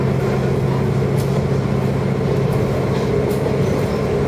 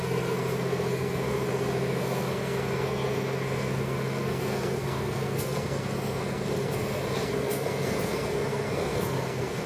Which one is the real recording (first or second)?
first